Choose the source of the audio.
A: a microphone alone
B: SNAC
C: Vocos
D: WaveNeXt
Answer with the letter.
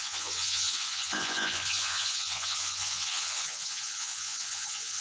C